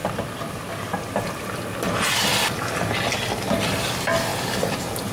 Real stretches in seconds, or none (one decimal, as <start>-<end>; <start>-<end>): 1.6-5.1